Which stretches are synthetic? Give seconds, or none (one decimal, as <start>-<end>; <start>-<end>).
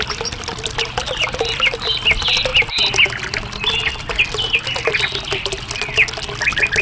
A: none